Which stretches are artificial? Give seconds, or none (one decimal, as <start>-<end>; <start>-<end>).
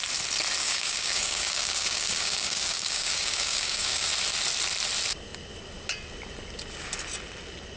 0.6-4.1